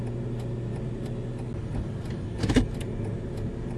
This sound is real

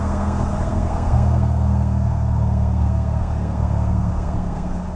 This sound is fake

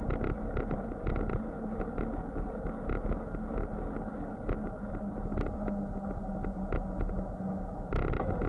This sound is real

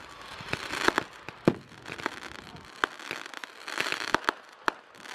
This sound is real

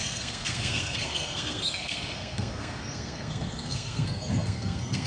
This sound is fake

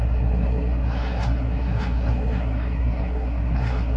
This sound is fake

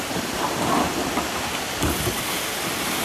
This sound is real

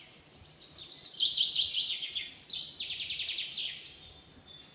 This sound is real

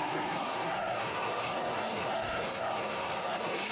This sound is fake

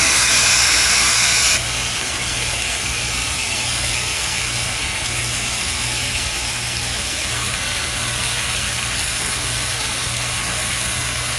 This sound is fake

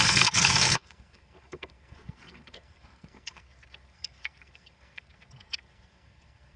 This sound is fake